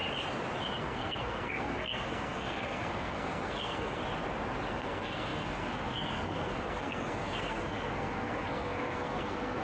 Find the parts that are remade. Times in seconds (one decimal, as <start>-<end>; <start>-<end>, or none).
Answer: 0.8-4.0; 4.7-9.6